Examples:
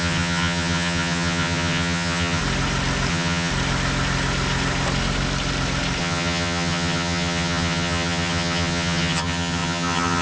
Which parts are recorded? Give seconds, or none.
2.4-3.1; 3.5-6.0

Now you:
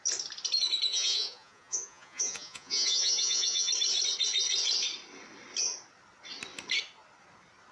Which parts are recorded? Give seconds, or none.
0.0-0.9; 3.7-7.7

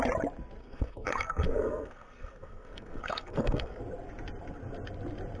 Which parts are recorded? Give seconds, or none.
0.0-0.6; 3.8-5.4

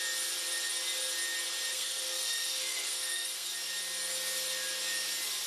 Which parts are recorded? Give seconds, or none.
0.0-1.7; 3.5-5.5

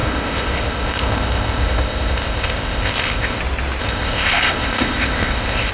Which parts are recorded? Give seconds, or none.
3.4-3.8